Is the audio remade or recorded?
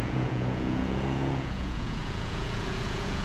remade